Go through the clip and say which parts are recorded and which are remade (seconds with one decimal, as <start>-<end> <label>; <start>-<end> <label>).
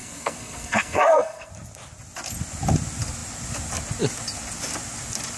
0.0-1.5 remade; 1.5-5.4 recorded